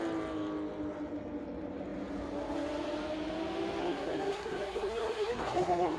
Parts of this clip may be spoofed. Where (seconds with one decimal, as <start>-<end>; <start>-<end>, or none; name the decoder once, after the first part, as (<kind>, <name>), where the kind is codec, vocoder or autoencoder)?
3.8-6.0 (codec, SNAC)